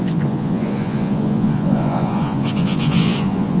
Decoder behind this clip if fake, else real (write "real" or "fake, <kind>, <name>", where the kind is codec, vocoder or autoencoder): fake, vocoder, Vocos